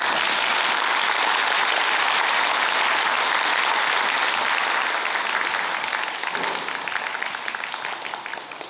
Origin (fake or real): real